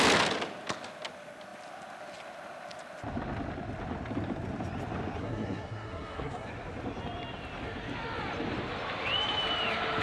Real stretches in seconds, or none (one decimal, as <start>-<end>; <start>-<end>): 0.0-5.2; 6.5-10.0